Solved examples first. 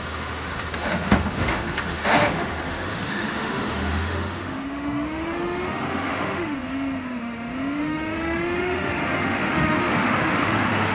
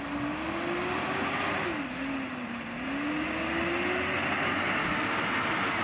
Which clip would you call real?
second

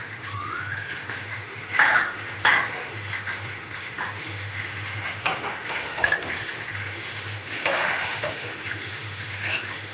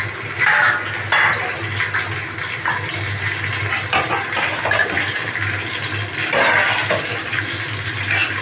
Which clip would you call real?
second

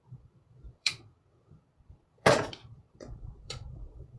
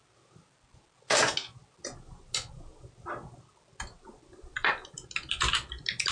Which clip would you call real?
second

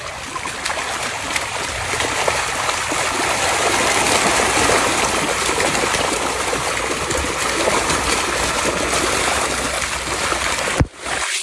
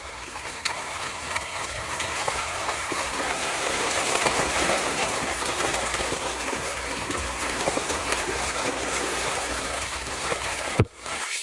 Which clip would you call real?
first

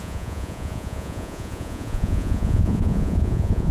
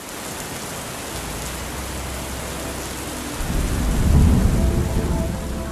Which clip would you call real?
second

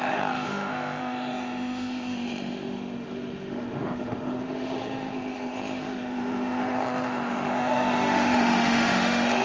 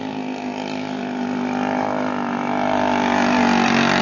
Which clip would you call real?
second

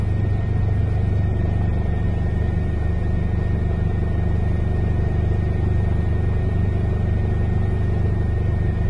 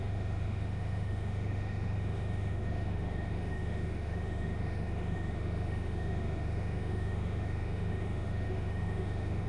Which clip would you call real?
first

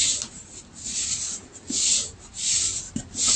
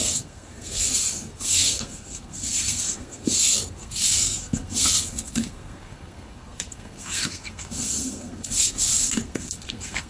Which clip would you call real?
first